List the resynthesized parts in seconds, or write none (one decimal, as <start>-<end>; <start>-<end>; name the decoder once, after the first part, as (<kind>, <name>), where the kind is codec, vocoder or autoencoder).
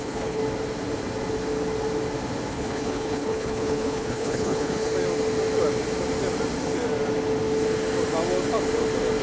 0.0-0.4 (codec, HILCodec); 2.5-4.9